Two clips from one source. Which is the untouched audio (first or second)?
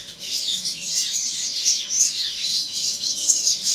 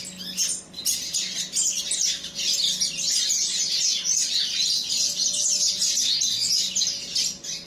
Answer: second